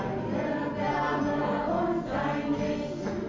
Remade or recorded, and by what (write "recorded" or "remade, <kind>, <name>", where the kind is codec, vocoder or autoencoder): recorded